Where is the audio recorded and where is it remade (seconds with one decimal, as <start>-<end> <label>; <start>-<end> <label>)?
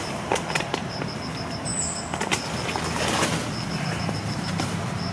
0.0-1.7 remade; 1.7-3.7 recorded; 3.7-5.1 remade